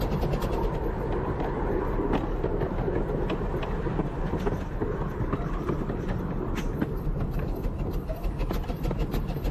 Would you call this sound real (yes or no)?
yes